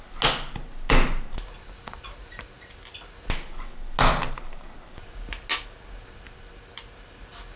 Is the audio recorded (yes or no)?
yes